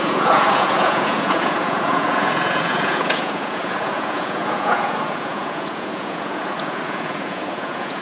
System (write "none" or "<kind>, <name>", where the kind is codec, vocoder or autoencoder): vocoder, Vocos